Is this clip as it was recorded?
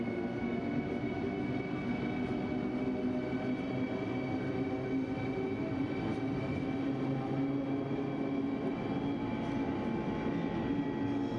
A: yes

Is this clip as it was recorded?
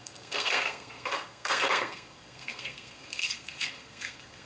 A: no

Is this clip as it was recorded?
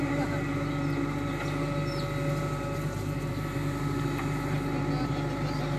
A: yes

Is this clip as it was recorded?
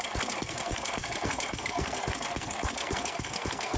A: no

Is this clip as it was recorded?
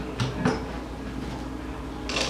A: yes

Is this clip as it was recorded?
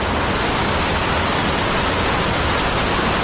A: yes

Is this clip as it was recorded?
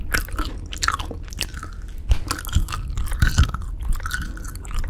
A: yes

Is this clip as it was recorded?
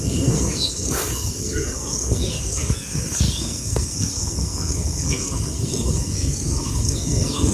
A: no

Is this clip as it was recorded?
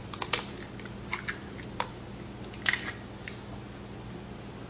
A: yes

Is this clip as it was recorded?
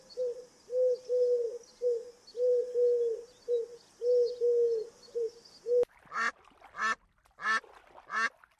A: yes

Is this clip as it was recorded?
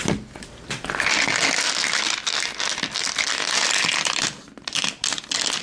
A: yes